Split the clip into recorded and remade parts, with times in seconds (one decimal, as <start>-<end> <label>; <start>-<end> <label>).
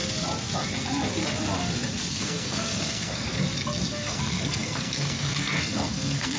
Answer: 0.0-2.1 recorded; 2.1-3.4 remade; 3.4-3.9 recorded; 3.9-6.4 remade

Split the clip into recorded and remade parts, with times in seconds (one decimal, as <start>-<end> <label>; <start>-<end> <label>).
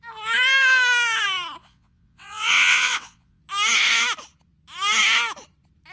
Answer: 0.0-1.6 recorded; 1.6-3.4 remade; 3.4-5.9 recorded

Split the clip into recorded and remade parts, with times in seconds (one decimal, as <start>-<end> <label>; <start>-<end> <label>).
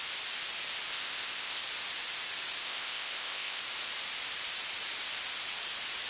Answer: 0.0-0.9 recorded; 0.9-1.6 remade; 1.6-2.6 recorded; 2.6-3.6 remade; 3.6-6.1 recorded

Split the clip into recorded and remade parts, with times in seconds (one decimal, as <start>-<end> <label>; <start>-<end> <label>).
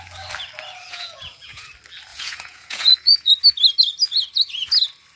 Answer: 0.0-0.9 recorded; 0.9-1.7 remade; 1.7-2.1 recorded; 2.1-3.3 remade; 3.3-5.2 recorded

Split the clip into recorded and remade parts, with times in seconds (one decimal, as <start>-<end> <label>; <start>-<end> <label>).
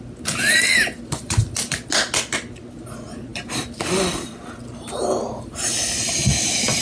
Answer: 0.0-6.8 recorded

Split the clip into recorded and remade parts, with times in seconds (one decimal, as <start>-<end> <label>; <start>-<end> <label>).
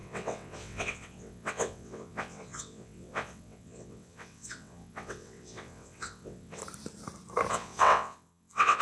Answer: 0.0-6.6 remade; 6.6-7.5 recorded; 7.5-8.8 remade